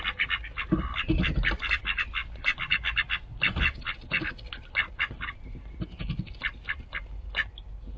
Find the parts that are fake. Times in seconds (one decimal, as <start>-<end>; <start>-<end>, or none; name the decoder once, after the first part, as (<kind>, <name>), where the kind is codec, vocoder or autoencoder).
none